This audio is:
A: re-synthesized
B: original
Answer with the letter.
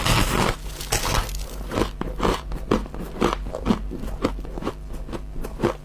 B